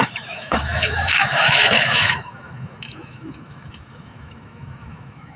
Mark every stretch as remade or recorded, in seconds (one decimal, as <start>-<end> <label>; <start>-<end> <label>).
0.0-5.4 remade